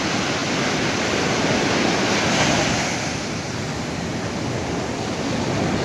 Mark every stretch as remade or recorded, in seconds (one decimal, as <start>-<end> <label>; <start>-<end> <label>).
0.0-5.8 recorded